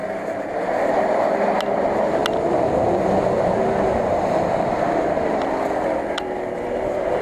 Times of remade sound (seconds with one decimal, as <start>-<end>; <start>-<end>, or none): 1.6-2.2; 6.1-7.2